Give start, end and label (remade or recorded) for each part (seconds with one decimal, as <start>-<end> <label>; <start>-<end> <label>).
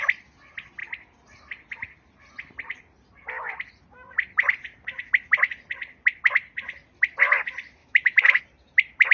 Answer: 0.0-7.8 recorded; 7.8-8.4 remade; 8.4-9.1 recorded